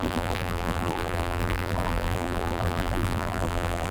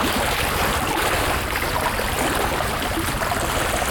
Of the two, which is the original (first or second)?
second